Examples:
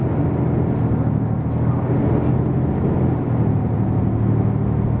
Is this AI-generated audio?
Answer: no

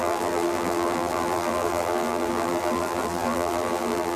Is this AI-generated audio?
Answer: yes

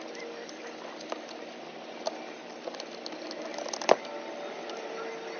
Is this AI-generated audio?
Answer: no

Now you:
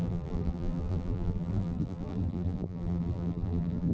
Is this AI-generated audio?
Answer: yes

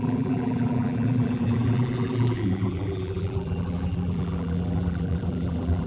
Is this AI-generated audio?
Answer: yes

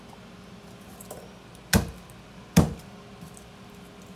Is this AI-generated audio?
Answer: no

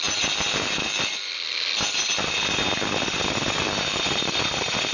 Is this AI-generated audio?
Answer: yes